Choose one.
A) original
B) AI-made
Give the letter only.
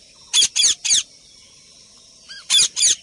A